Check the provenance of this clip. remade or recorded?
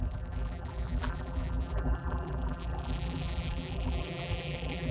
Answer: remade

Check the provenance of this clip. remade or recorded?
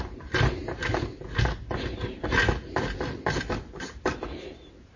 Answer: recorded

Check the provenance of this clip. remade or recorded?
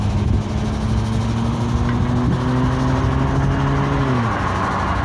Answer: recorded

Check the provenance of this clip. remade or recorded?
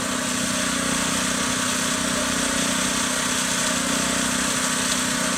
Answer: recorded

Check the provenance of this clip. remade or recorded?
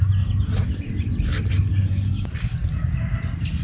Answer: recorded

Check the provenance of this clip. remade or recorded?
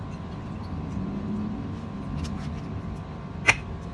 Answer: recorded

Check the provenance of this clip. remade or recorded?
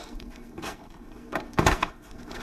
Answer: remade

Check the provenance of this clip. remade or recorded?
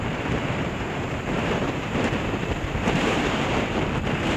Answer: remade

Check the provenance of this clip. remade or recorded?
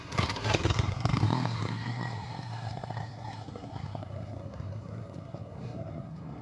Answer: remade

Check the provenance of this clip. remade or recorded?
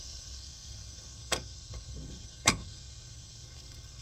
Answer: remade